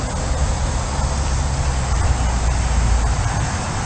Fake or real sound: real